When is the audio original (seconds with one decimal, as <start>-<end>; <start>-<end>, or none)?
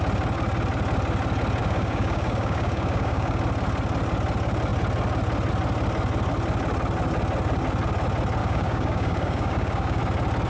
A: 0.0-1.6; 3.4-8.4; 10.0-10.5